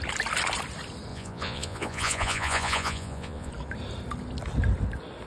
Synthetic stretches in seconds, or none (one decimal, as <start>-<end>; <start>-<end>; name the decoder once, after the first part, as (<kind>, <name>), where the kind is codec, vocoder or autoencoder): 1.1-3.5 (vocoder, Vocos)